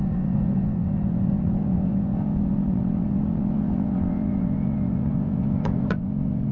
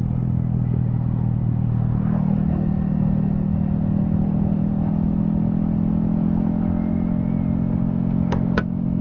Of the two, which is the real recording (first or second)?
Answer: second